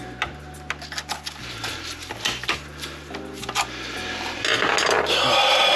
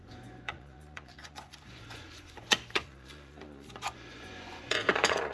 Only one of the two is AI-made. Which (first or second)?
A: second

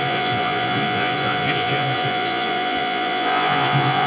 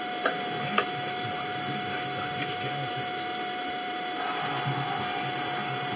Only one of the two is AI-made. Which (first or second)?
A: first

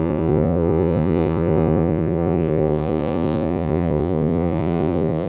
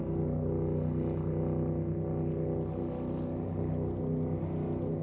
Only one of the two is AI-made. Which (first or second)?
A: first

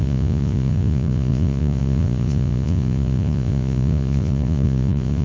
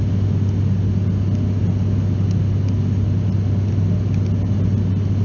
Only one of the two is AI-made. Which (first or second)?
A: first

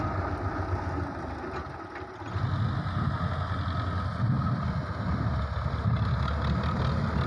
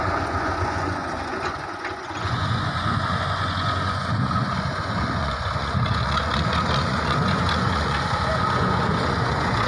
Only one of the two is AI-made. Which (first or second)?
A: second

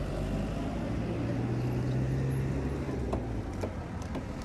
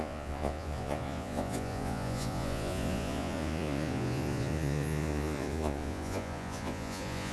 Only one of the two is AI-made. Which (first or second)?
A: second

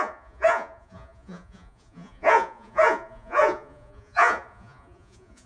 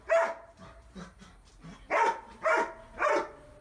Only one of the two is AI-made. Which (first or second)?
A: first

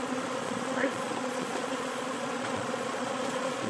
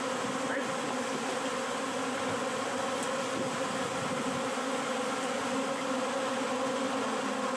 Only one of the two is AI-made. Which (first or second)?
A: first